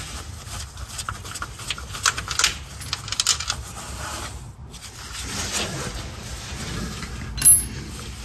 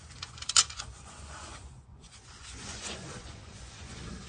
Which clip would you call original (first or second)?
first